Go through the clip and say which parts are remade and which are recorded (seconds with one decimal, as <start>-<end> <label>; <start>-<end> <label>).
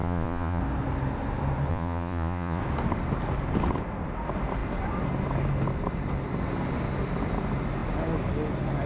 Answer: 0.0-0.6 remade; 0.6-1.7 recorded; 1.7-2.6 remade; 2.6-8.9 recorded